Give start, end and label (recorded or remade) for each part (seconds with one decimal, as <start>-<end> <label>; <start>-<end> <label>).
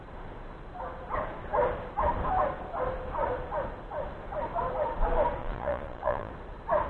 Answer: 0.0-5.4 recorded; 5.4-6.3 remade; 6.3-6.9 recorded